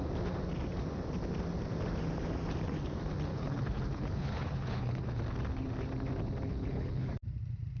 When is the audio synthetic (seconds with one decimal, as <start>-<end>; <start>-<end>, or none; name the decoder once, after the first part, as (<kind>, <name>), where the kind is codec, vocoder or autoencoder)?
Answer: 3.3-5.2 (codec, HILCodec); 6.5-7.1